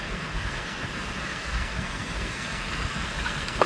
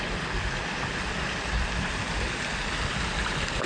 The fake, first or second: first